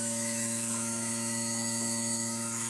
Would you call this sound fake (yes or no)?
yes